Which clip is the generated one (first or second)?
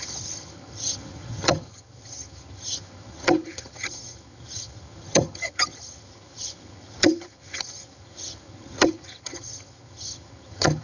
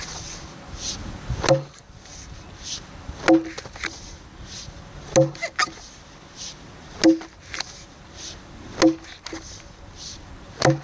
first